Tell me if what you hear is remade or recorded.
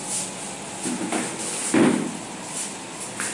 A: recorded